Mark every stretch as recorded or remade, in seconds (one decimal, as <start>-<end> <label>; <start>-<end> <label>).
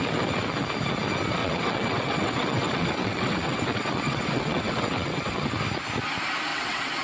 0.0-1.4 recorded; 1.4-5.4 remade; 5.4-6.5 recorded; 6.5-7.0 remade